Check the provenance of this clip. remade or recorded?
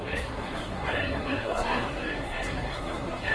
remade